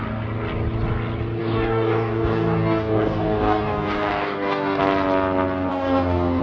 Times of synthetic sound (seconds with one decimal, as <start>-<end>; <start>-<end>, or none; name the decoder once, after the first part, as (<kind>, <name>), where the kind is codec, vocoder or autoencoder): 1.4-4.8 (codec, DAC); 5.7-6.4